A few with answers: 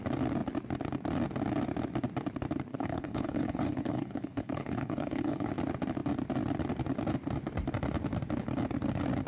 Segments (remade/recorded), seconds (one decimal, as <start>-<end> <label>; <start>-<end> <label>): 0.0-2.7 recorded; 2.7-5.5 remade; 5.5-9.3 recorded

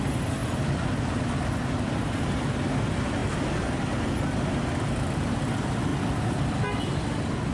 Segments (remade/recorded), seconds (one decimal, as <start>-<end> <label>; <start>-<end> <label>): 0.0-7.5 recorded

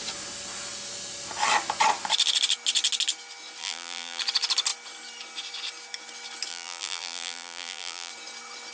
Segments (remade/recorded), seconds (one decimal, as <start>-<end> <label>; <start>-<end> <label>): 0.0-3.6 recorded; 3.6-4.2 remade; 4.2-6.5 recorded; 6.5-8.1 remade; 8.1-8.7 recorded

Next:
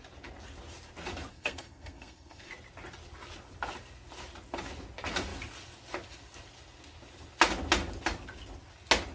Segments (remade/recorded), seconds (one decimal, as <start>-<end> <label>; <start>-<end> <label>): 0.0-1.3 recorded; 1.3-2.5 remade; 2.5-9.1 recorded

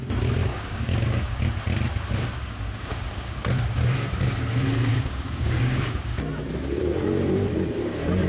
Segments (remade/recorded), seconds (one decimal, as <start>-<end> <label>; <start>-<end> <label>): 0.0-0.5 recorded; 0.5-1.4 remade; 1.4-2.4 recorded; 2.4-3.4 remade; 3.4-4.9 recorded; 4.9-6.2 remade; 6.2-8.3 recorded

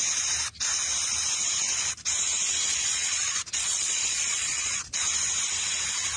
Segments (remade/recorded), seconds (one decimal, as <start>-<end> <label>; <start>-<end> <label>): 0.0-2.7 recorded; 2.7-5.0 remade; 5.0-6.2 recorded